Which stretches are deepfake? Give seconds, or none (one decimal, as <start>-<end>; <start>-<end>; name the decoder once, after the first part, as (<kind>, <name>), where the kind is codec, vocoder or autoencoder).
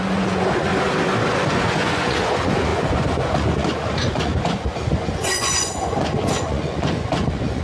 0.0-0.7 (vocoder, Vocos); 1.3-7.6